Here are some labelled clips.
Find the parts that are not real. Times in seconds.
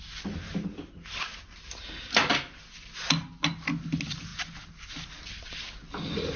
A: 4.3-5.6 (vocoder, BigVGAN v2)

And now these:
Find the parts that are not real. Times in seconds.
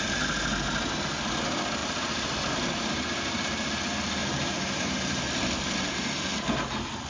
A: 1.8-3.2 (vocoder, BigVGAN v2); 4.2-5.2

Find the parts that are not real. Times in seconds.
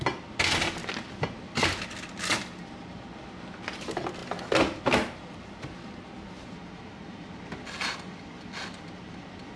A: 0.8-1.8 (vocoder, BigVGAN v2)